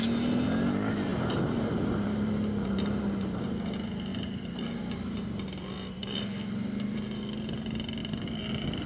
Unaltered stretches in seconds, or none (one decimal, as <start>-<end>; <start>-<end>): 0.0-1.1; 2.3-4.1; 4.8-6.0; 7.0-8.0